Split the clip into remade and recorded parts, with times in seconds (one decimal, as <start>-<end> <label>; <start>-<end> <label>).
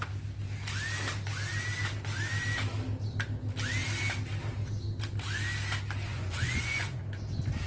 0.0-6.1 recorded; 6.1-7.0 remade; 7.0-7.7 recorded